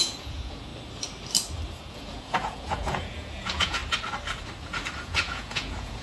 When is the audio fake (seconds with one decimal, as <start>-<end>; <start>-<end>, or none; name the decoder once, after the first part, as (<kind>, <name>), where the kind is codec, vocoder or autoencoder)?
0.0-0.7 (vocoder, Vocos); 1.7-3.8; 5.0-6.0